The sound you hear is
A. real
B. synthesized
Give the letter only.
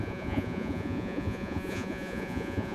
B